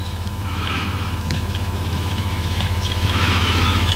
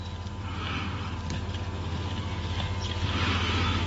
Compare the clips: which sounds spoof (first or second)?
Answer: first